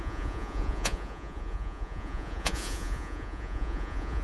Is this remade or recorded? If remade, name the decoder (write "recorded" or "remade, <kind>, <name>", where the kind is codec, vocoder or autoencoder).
remade, vocoder, Vocos